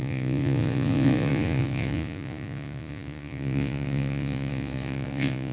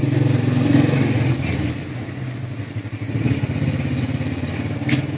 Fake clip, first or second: first